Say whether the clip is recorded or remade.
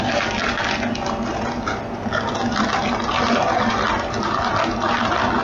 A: recorded